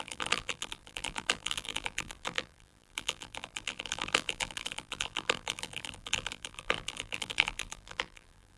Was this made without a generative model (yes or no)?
no